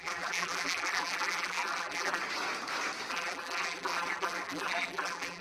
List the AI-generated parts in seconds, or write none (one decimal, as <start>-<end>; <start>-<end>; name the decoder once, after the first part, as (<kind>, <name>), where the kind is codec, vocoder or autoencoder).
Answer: 0.0-2.2 (vocoder, BigVGAN v2); 3.1-5.4